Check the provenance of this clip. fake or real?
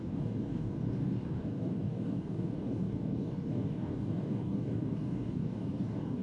fake